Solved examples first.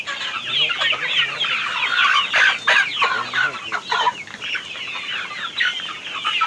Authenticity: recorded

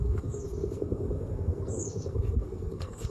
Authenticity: remade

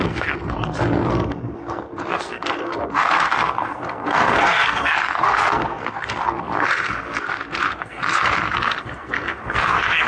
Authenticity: remade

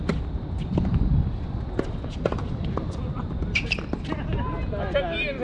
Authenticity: recorded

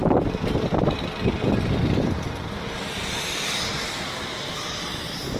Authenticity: recorded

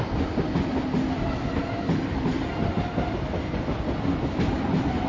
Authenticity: recorded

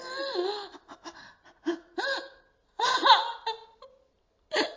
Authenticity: recorded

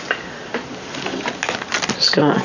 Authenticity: recorded